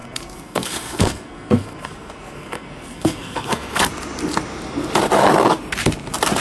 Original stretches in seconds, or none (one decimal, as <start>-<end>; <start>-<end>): 3.8-6.4